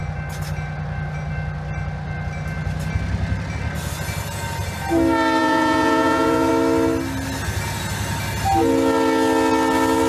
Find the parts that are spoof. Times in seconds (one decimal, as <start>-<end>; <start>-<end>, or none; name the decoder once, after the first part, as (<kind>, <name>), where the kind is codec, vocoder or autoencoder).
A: 5.4-6.5 (vocoder, Vocos)